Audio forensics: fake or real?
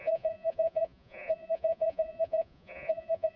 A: fake